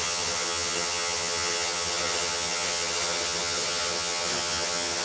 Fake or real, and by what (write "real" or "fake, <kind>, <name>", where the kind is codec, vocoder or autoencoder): fake, vocoder, HiFi-GAN